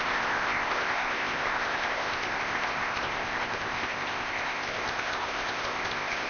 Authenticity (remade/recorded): remade